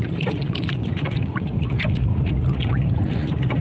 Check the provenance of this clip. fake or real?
fake